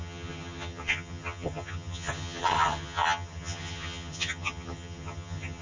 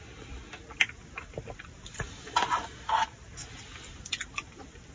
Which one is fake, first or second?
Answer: first